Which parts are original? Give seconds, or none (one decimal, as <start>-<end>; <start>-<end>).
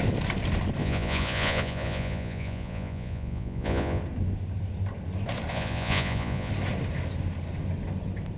0.0-0.8; 4.0-5.5; 6.5-8.4